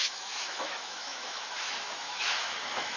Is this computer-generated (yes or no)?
yes